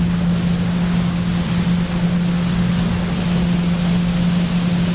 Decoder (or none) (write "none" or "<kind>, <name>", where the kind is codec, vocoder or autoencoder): none